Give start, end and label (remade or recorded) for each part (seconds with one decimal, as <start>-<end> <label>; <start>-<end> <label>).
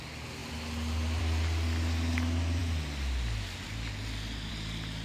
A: 0.0-5.0 recorded